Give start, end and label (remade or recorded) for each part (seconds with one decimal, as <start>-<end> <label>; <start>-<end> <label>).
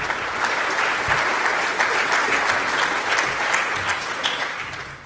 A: 0.0-3.9 recorded; 3.9-4.4 remade; 4.4-5.1 recorded